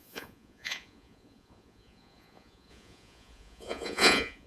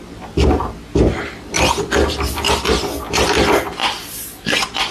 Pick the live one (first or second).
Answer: second